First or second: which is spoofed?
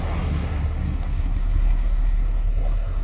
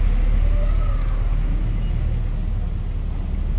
first